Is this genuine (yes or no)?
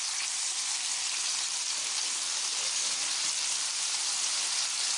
no